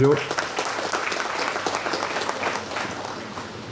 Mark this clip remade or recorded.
recorded